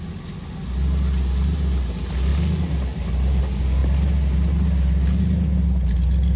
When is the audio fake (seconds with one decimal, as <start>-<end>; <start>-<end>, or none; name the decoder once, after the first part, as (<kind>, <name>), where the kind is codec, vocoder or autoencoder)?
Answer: none